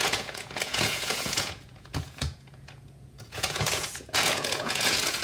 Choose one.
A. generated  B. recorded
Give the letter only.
A